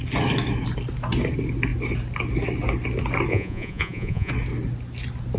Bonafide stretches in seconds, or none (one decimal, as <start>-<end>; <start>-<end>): 0.0-3.3; 4.3-5.4

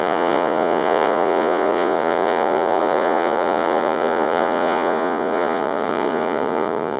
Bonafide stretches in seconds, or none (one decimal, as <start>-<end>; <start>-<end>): none

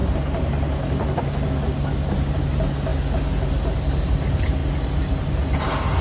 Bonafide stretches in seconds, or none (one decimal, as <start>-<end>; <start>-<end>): 0.0-6.0

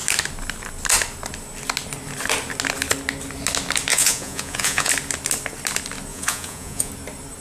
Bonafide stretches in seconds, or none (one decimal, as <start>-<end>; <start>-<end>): 0.0-3.9; 4.9-6.1; 6.9-7.4

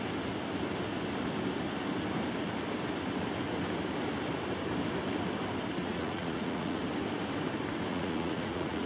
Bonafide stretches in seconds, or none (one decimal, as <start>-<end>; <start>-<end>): 0.0-5.8; 6.8-7.9

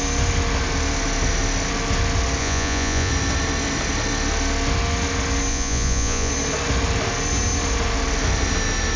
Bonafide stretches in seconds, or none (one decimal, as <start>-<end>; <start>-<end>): 0.0-2.4; 3.1-5.5; 6.3-9.0

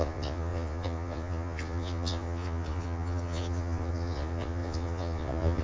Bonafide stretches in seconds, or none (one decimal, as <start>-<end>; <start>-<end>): none

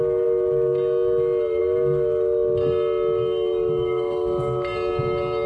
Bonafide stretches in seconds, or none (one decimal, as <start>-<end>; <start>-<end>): 0.0-5.5